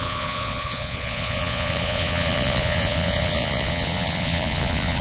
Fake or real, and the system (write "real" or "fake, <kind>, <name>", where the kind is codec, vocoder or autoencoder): fake, vocoder, Vocos